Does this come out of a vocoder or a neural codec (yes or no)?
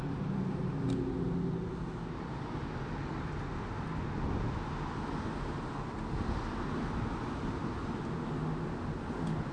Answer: no